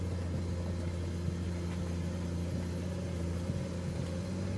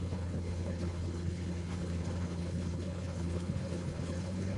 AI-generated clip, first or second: second